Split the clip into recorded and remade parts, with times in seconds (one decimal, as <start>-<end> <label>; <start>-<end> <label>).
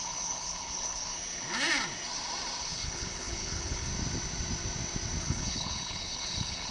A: 0.0-1.0 remade; 1.0-2.6 recorded; 2.6-3.9 remade; 3.9-5.2 recorded; 5.2-6.7 remade